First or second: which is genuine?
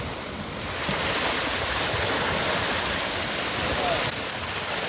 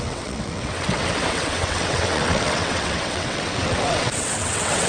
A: first